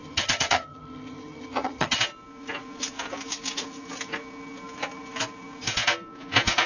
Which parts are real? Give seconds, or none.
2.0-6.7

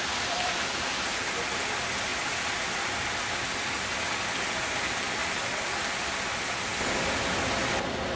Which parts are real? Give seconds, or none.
0.0-8.2

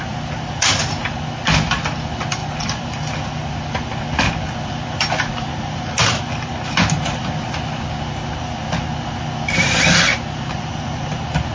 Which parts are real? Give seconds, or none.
0.0-5.5; 6.2-10.1; 11.1-11.5